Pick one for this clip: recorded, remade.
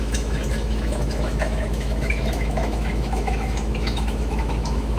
remade